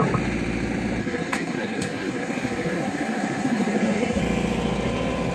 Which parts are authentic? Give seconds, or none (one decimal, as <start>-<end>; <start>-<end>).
0.0-1.0; 4.2-5.3